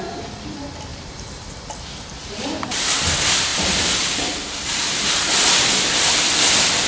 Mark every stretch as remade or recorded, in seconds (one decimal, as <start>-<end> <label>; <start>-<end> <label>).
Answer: 0.0-0.9 recorded; 0.9-3.0 remade; 3.0-3.5 recorded; 3.5-5.7 remade; 5.7-6.9 recorded